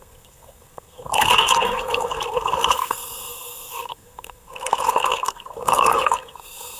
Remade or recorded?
remade